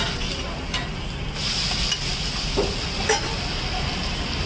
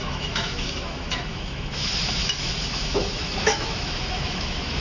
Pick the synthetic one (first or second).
second